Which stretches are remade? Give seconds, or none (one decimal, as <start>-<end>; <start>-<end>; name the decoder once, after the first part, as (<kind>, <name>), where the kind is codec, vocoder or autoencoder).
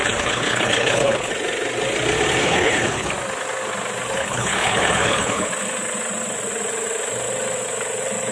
0.0-1.3 (codec, HILCodec); 2.4-3.1; 4.2-5.5